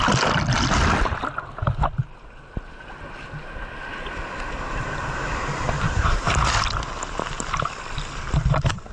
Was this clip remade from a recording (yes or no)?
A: no